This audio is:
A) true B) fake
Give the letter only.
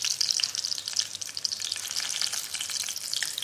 A